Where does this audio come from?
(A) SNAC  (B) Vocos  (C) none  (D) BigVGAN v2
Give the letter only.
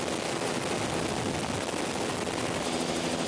C